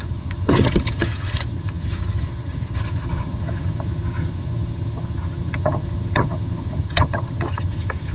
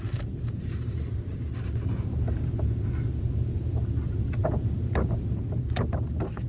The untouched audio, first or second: second